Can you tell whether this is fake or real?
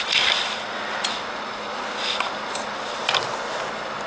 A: real